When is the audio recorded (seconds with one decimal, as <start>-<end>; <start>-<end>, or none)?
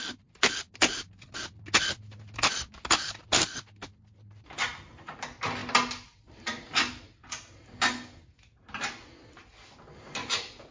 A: 0.0-10.7